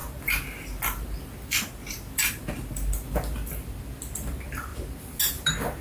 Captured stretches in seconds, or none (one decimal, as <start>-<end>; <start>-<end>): 3.5-5.8